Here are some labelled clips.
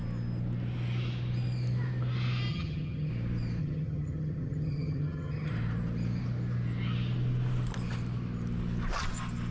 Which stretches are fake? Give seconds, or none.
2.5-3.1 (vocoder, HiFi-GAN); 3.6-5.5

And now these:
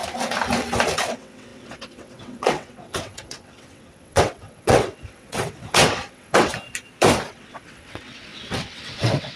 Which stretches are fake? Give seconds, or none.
1.1-6.5 (vocoder, WaveNeXt); 7.3-9.4

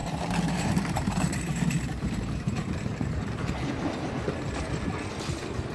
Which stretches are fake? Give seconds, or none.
0.0-3.4 (vocoder, BigVGAN v2)

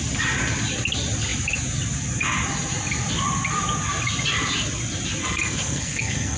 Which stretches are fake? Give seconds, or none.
5.2-6.4 (codec, SNAC)

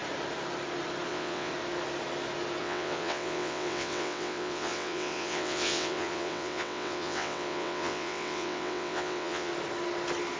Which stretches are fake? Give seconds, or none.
1.1-1.5 (vocoder, WaveNeXt); 2.6-9.5

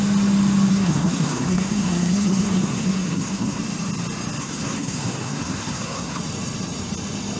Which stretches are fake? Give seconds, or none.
0.7-3.6 (codec, SNAC); 4.4-6.2

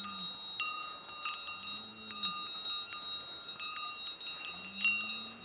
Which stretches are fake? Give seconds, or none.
none

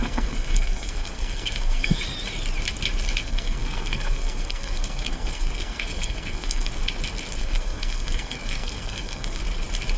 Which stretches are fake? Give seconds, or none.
0.0-2.0 (codec, SNAC); 3.2-6.7; 7.4-9.4